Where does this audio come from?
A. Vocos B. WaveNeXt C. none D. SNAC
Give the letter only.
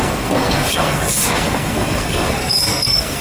D